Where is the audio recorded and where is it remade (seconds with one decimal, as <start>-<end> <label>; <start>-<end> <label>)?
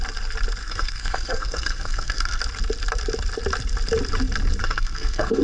0.0-0.6 recorded; 0.6-2.4 remade; 2.4-4.6 recorded; 4.6-5.4 remade